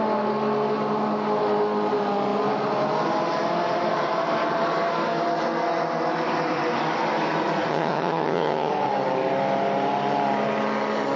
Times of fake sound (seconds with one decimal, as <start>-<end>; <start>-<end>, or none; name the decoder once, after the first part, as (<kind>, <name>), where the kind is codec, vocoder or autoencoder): 7.7-8.7 (vocoder, HiFi-GAN)